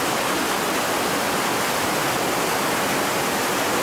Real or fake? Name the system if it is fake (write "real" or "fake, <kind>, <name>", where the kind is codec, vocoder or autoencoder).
real